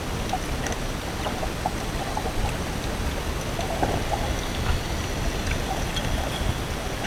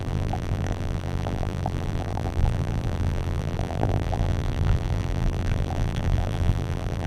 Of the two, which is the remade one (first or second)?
second